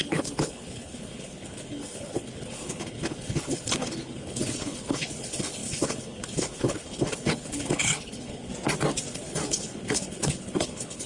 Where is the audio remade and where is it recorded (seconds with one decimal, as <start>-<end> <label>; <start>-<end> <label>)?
0.0-8.5 remade; 8.5-9.1 recorded; 9.1-11.1 remade